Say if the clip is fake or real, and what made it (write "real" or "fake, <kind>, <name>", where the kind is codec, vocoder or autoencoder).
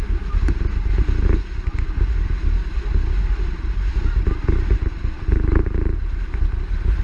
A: real